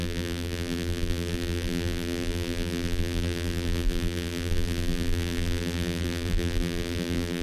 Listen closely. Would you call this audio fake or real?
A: fake